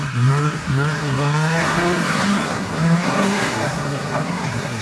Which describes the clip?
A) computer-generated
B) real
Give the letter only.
A